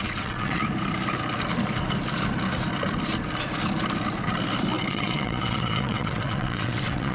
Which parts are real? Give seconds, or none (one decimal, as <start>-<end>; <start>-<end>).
0.6-4.9